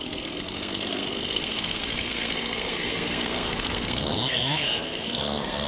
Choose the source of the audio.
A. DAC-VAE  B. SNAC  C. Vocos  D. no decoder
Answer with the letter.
B